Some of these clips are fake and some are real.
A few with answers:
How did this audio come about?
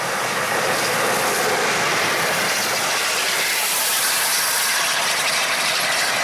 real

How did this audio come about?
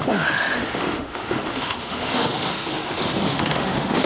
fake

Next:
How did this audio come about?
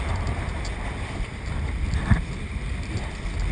fake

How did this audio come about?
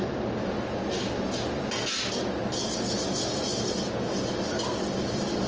real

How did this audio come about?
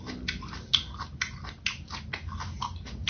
real